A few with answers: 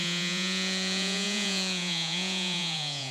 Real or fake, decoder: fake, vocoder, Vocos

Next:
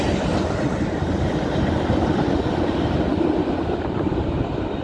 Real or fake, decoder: real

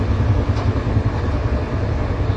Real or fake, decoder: real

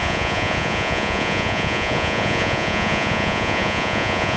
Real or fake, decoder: fake, vocoder, Vocos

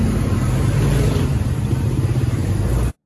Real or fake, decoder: real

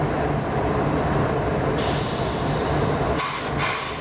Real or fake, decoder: real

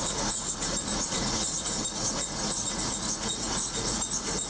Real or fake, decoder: fake, vocoder, Vocos